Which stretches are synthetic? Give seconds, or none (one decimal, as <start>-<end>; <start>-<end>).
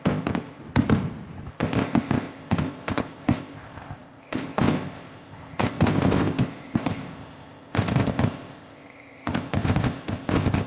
0.0-0.6; 1.5-10.7